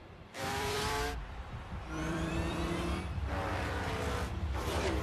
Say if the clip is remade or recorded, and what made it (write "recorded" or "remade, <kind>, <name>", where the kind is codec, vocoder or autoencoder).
remade, vocoder, BigVGAN v2